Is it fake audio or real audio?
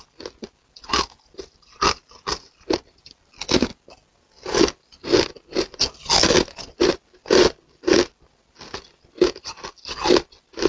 real